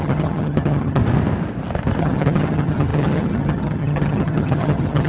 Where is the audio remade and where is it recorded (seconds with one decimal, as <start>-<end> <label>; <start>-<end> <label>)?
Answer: 0.0-1.0 remade; 1.0-2.0 recorded; 2.0-5.1 remade